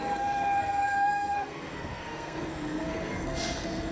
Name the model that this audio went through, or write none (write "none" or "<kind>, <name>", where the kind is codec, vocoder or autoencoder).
codec, SNAC